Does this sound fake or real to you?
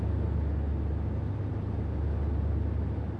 real